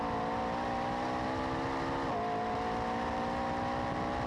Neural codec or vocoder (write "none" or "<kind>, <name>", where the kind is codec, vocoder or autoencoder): none